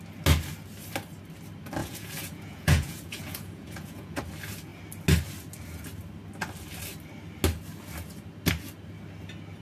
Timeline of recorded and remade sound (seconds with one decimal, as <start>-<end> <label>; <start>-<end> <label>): 0.0-1.8 recorded; 1.8-4.2 remade; 4.2-9.6 recorded